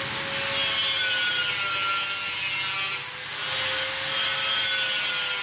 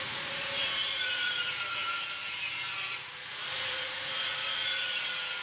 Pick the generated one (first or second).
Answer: second